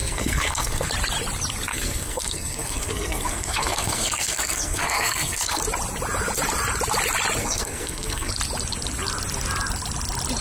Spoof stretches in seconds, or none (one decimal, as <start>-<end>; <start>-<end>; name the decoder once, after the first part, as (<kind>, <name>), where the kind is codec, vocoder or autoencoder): 0.0-0.9 (codec, SNAC); 1.7-5.6; 7.4-8.3